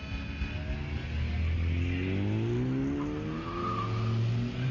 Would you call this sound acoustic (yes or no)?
yes